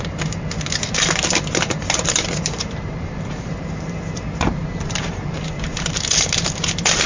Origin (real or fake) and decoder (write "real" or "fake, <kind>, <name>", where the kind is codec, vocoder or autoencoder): fake, vocoder, BigVGAN v2